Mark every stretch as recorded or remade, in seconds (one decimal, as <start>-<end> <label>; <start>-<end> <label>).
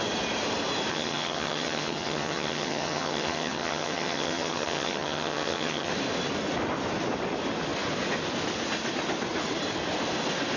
0.0-0.9 recorded; 0.9-5.9 remade; 5.9-10.6 recorded